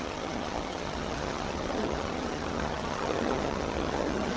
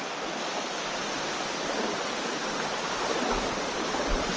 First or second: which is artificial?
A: first